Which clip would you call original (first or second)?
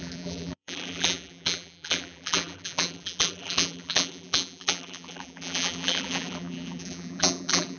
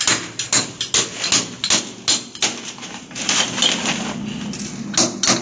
second